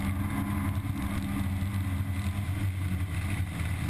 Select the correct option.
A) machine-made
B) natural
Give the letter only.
B